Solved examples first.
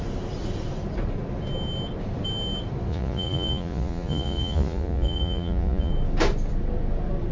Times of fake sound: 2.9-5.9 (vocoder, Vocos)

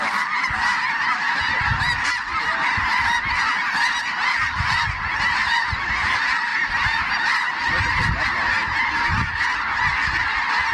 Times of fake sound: none